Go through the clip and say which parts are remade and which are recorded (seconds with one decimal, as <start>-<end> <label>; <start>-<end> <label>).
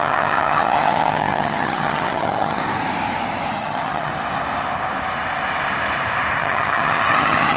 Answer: 0.0-2.6 remade; 2.6-3.5 recorded; 3.5-4.1 remade; 4.1-6.4 recorded; 6.4-7.6 remade